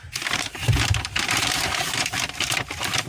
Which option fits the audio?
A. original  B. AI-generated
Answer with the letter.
B